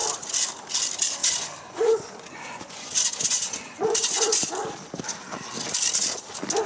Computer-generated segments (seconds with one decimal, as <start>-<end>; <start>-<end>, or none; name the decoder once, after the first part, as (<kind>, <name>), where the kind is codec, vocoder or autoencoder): 1.2-4.5 (vocoder, Vocos)